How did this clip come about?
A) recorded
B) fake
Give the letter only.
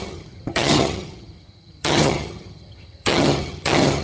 B